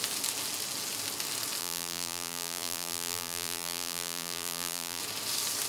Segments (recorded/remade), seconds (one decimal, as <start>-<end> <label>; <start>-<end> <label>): 0.0-1.6 recorded; 1.6-5.0 remade; 5.0-5.7 recorded